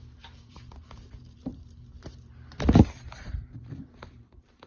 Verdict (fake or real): fake